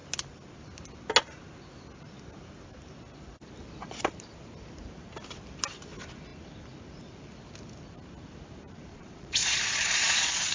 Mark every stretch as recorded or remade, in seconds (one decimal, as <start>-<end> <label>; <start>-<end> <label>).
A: 0.0-8.9 recorded; 8.9-10.5 remade